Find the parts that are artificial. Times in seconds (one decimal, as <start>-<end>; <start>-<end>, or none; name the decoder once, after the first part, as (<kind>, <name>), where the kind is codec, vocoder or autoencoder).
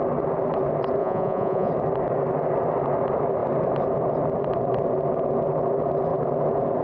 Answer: 1.0-1.7 (vocoder, Vocos)